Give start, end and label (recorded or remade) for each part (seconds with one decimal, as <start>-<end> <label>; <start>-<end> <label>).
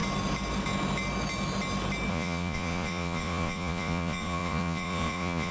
0.0-2.1 recorded; 2.1-5.5 remade